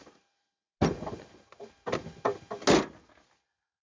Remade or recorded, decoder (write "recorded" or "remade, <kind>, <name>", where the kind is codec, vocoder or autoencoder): recorded